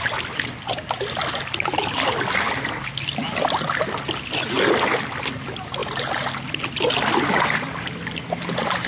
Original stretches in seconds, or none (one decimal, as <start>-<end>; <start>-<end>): 0.0-8.9